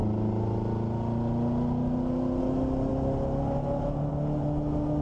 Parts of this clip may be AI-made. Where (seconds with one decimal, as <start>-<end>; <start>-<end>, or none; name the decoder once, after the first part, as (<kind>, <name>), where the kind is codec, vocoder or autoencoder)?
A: none